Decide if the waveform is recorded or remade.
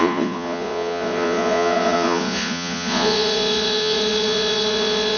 remade